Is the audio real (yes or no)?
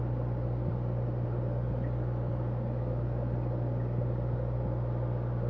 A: yes